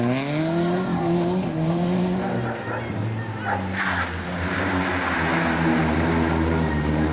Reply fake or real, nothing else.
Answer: real